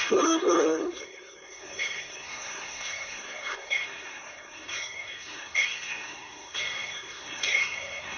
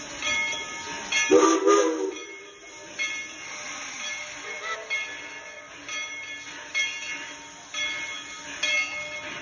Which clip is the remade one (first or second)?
first